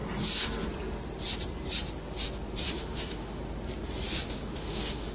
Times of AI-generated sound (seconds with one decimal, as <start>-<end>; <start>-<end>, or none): 2.7-3.4; 4.3-5.1

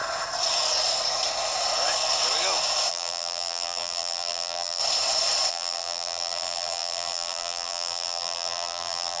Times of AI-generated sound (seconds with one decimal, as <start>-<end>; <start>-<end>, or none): 2.9-4.8; 5.5-9.2

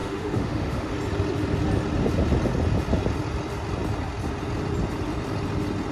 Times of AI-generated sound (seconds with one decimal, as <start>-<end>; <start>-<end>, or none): 0.0-0.9

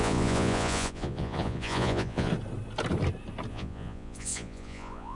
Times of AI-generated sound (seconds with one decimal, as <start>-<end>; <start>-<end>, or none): 0.0-2.3; 3.5-5.2